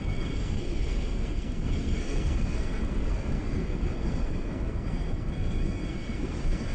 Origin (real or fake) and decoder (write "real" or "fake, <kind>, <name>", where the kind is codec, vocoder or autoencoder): fake, codec, SNAC